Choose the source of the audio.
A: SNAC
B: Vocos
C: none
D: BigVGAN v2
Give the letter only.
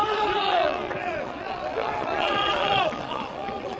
B